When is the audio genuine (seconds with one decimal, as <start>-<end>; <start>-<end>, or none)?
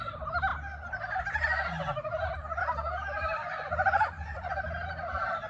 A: 0.0-3.4; 4.5-5.5